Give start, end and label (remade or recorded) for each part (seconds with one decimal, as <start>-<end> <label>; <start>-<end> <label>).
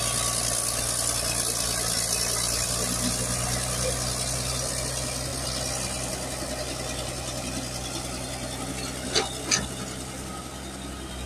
0.0-11.3 recorded